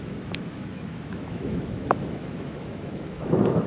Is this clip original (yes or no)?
no